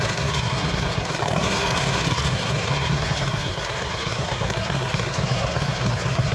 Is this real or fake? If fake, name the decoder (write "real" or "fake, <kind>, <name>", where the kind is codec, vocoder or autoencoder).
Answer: fake, codec, SNAC